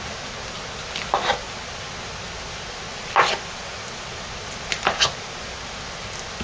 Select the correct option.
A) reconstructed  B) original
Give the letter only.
B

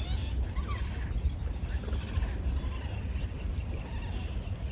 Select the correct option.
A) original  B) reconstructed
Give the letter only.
A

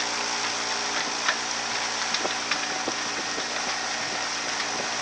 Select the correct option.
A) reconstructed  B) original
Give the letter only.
B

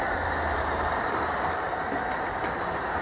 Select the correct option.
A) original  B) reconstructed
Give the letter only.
A